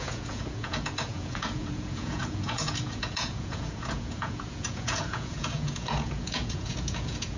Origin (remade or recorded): remade